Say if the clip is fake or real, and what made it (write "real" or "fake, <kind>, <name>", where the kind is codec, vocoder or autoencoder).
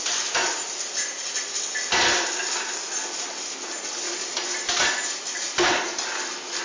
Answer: real